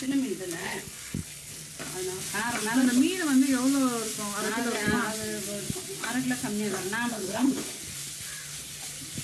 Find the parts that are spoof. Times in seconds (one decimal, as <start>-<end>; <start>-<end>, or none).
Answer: 0.6-1.6; 7.1-7.8